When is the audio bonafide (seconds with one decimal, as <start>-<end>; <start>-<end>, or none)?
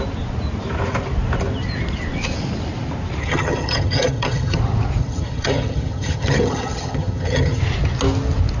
0.0-3.2; 4.6-5.0; 7.6-8.6